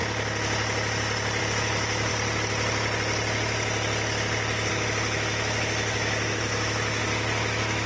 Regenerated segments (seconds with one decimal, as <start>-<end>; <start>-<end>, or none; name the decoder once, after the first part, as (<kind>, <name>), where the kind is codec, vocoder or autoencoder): 1.4-2.1 (autoencoder, DAC-VAE); 4.7-7.9